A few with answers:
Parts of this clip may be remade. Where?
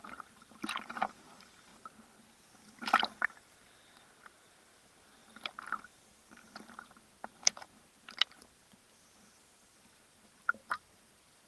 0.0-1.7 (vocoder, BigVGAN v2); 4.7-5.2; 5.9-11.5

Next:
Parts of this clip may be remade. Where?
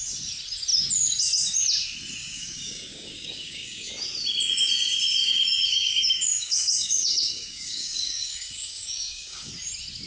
2.2-3.9 (codec, DAC); 5.2-9.5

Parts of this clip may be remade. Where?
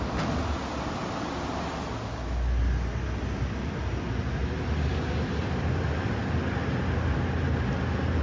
4.4-5.9 (vocoder, BigVGAN v2)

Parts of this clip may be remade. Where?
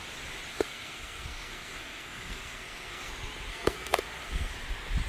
0.5-3.1 (codec, SNAC); 3.5-4.5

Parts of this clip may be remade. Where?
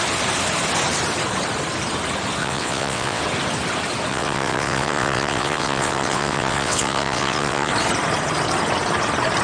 2.4-3.2 (vocoder, WaveNeXt); 4.1-7.7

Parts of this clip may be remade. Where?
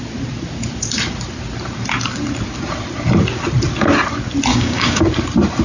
4.5-5.0 (codec, DAC)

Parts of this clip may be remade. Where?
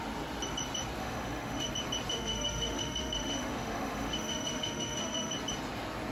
1.0-1.7 (autoencoder, DAC-VAE); 2.1-5.3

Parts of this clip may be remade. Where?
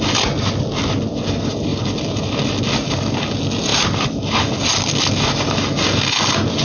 none